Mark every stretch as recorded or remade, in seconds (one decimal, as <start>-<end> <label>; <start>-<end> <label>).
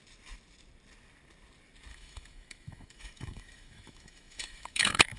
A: 0.0-1.9 recorded; 1.9-5.2 remade